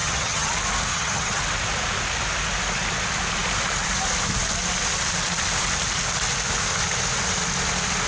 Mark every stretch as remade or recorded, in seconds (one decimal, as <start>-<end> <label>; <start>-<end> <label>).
0.0-0.5 remade; 0.5-0.9 recorded; 0.9-1.4 remade; 1.4-8.1 recorded